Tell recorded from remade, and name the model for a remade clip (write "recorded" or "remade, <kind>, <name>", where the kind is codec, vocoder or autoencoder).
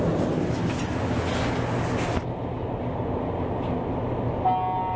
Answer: recorded